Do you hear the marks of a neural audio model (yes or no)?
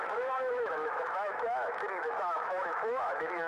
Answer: yes